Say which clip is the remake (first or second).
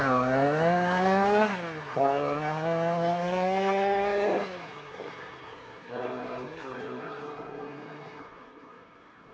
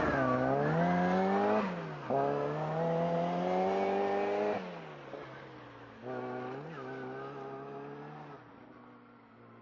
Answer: first